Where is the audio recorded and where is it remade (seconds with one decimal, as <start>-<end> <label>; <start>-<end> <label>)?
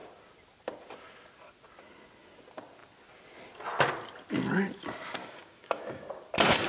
0.0-5.2 recorded; 5.2-5.8 remade; 5.8-6.7 recorded